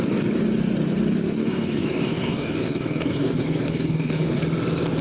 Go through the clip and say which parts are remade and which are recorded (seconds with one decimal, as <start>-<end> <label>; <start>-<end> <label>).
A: 0.0-1.4 recorded; 1.4-4.4 remade; 4.4-5.0 recorded